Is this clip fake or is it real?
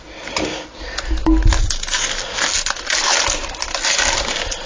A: real